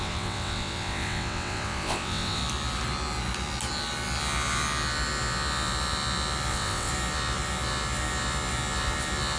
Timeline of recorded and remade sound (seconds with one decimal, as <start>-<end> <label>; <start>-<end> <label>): 0.0-2.4 remade; 2.4-6.5 recorded; 6.5-6.9 remade; 6.9-9.4 recorded